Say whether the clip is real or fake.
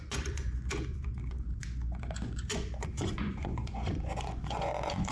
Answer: fake